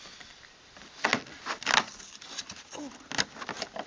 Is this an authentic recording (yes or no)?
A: yes